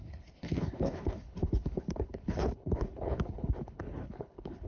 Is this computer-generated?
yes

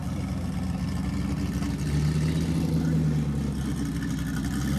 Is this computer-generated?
no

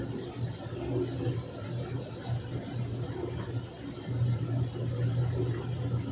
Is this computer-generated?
no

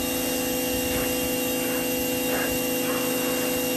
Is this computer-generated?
no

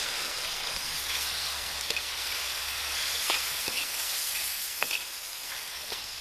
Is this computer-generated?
yes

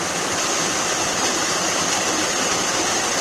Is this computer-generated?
no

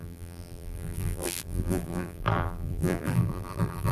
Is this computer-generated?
yes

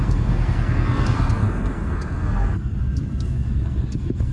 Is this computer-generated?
yes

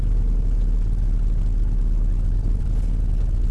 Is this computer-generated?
no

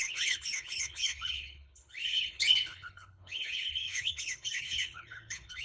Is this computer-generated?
yes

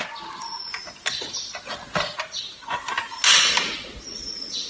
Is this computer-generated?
no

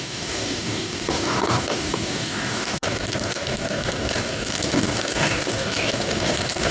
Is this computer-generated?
yes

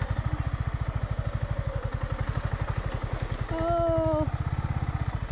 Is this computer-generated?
no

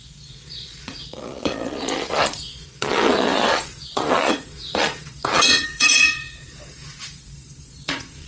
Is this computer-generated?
yes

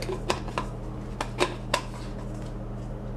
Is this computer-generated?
no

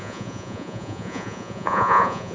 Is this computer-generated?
yes